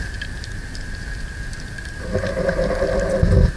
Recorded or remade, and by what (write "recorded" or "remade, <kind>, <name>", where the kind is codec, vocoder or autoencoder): recorded